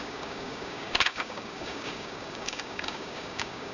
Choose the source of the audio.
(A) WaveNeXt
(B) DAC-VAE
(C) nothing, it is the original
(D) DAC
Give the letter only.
D